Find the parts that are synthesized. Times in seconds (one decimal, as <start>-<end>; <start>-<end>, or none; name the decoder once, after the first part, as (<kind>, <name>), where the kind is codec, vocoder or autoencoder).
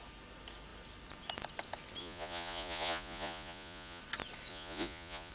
2.0-4.0 (vocoder, Vocos); 4.5-5.3